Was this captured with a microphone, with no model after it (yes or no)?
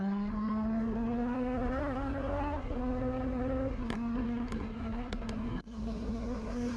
no